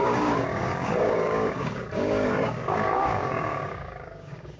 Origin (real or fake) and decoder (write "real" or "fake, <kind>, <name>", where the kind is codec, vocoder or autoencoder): fake, codec, DAC